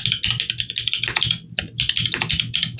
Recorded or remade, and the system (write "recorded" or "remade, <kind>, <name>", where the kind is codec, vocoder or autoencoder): recorded